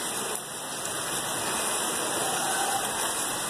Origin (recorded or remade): recorded